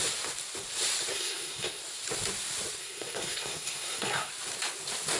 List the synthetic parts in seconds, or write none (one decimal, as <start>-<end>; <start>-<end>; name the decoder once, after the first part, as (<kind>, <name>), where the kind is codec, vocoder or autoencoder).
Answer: 1.1-1.8 (codec, SNAC); 2.8-4.3